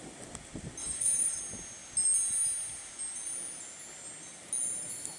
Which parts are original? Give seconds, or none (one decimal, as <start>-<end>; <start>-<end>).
0.0-0.8; 1.4-5.2